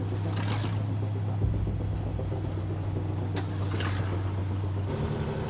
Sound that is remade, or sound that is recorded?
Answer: recorded